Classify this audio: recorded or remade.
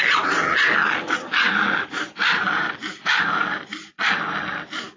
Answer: recorded